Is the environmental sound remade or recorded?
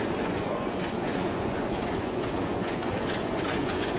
remade